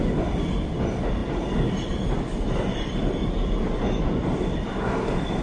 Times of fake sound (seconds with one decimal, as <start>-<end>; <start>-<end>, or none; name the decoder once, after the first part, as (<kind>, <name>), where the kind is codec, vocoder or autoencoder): 0.0-1.2 (vocoder, BigVGAN v2); 1.9-3.2; 4.0-5.4